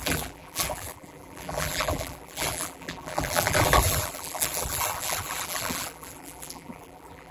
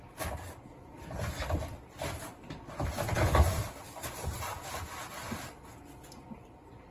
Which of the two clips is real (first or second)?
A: second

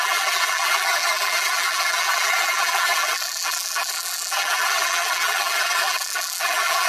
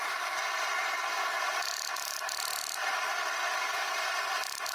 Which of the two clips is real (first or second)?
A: second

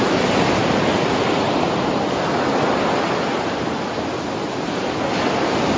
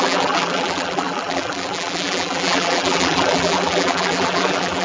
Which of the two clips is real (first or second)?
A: first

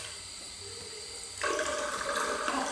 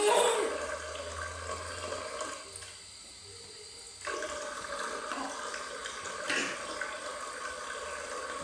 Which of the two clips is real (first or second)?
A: second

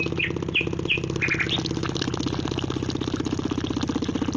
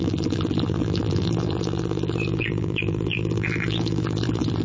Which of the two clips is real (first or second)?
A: first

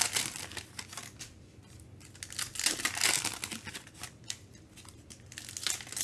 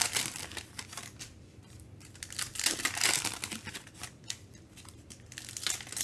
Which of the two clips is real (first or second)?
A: first